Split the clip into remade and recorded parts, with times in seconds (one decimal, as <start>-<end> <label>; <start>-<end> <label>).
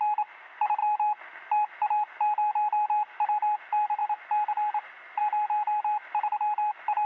0.0-7.1 recorded